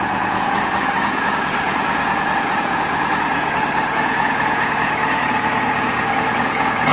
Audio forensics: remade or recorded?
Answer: remade